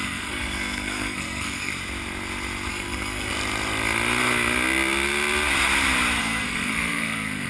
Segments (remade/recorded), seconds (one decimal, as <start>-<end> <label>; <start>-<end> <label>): 0.0-1.7 remade; 1.7-2.7 recorded; 2.7-3.3 remade; 3.3-6.2 recorded; 6.2-7.5 remade